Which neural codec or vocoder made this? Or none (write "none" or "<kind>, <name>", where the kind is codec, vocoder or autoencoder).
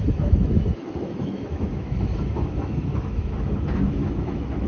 autoencoder, DAC-VAE